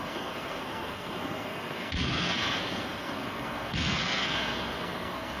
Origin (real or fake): fake